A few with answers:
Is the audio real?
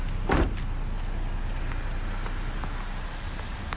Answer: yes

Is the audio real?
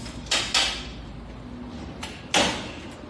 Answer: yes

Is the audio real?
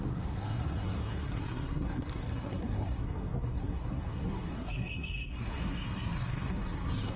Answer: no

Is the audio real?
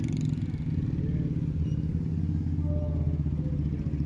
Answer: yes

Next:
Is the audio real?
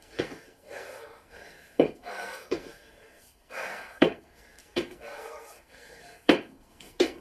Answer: no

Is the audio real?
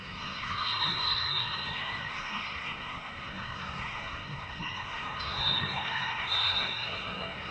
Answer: no